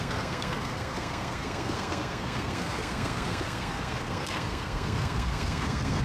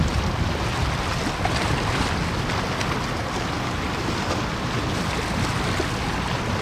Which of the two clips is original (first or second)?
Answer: second